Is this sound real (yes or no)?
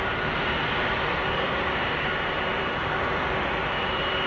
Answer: no